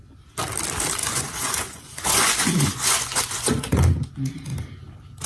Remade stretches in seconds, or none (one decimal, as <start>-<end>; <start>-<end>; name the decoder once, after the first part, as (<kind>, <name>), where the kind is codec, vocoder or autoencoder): 1.0-3.8 (vocoder, Vocos)